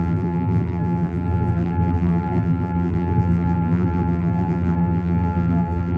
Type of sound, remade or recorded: remade